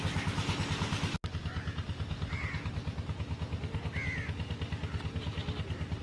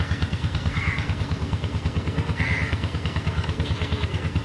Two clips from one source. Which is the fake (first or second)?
second